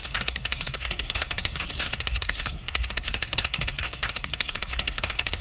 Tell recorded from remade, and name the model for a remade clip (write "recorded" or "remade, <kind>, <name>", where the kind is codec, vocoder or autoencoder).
remade, codec, SNAC